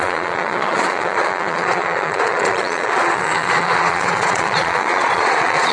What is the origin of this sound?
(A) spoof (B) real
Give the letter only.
A